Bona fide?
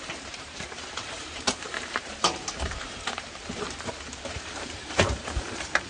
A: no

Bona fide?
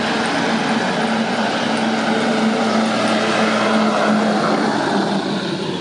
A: yes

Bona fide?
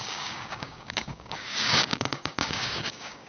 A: no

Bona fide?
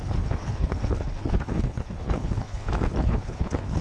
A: no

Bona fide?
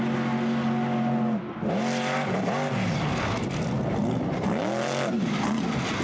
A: yes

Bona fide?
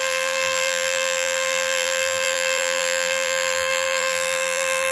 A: no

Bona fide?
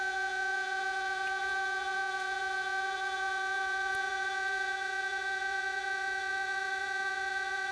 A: no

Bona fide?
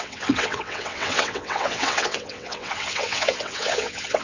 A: no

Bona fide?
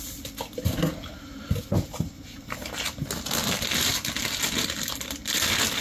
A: yes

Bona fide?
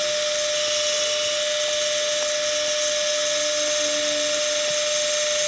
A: yes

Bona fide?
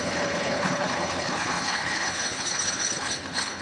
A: no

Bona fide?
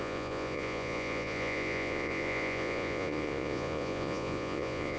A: no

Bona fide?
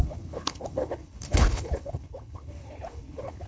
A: no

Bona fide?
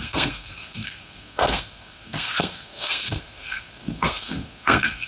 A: no